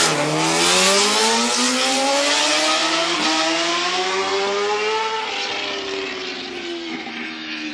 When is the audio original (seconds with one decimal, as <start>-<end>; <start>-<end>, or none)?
0.0-6.9